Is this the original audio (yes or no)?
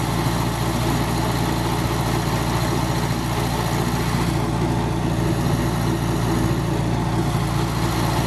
yes